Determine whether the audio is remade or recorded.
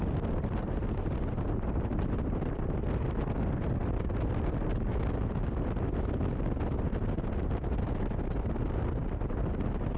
recorded